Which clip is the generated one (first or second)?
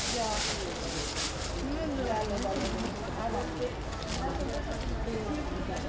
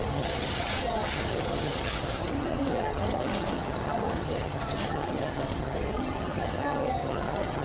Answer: second